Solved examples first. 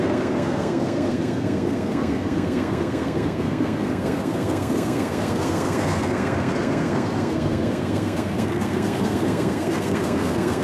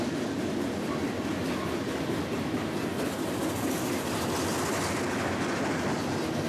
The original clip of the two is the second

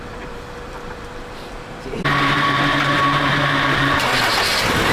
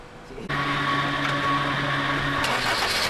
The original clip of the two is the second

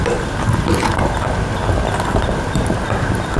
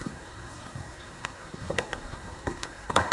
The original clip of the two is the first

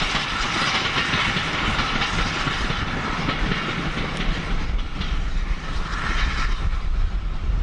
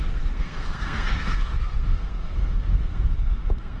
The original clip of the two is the first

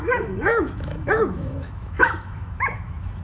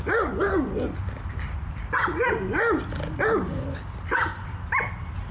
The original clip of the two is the second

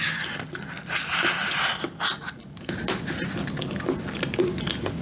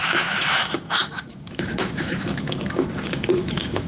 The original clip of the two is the first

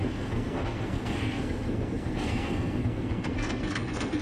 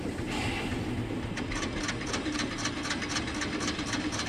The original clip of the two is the second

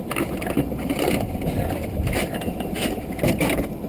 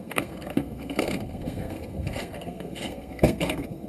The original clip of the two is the first